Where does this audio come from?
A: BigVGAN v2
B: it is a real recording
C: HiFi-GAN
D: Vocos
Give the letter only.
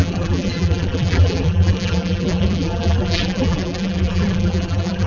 A